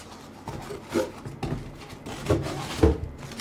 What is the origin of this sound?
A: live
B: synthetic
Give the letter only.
A